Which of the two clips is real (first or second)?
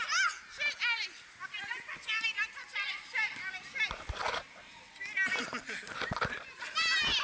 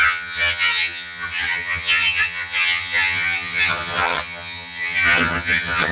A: first